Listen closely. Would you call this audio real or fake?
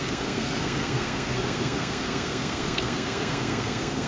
fake